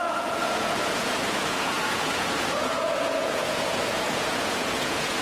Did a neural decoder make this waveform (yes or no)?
yes